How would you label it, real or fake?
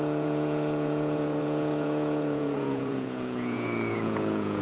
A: fake